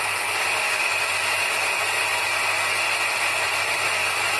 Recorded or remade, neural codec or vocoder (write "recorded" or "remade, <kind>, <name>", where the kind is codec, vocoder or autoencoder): recorded